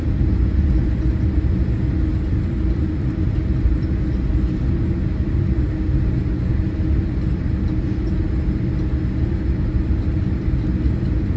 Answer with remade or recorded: recorded